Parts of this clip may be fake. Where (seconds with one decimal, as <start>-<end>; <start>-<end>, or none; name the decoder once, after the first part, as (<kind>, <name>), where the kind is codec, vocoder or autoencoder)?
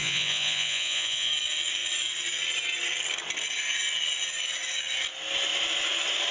0.0-1.3 (vocoder, Vocos)